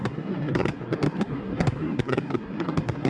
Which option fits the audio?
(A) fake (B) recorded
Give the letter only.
A